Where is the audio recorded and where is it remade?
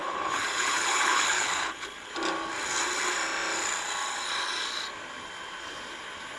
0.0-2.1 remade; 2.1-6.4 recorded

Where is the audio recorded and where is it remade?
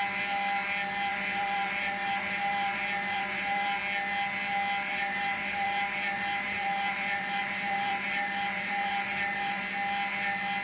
0.0-1.1 recorded; 1.1-3.8 remade; 3.8-4.9 recorded; 4.9-9.6 remade; 9.6-10.6 recorded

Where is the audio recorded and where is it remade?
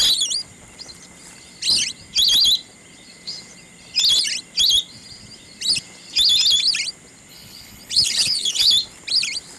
0.0-7.3 recorded; 7.3-8.7 remade; 8.7-9.6 recorded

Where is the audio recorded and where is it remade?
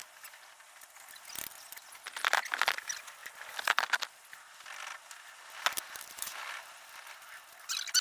0.0-8.0 recorded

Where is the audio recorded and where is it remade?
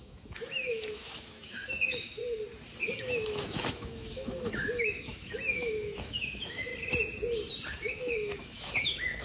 0.0-2.2 remade; 2.2-3.0 recorded; 3.0-6.7 remade; 6.7-7.7 recorded; 7.7-9.2 remade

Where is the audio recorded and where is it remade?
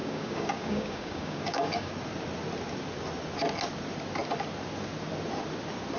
0.0-1.9 remade; 1.9-6.0 recorded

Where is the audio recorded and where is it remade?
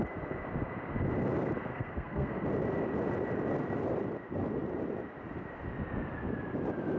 0.0-1.7 recorded; 1.7-2.4 remade; 2.4-7.0 recorded